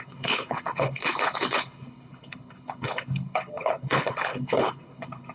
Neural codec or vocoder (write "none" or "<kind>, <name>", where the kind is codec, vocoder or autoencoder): codec, HILCodec